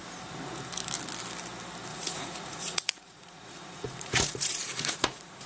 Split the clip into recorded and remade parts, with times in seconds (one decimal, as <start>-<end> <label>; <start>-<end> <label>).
0.0-1.9 recorded; 1.9-5.5 remade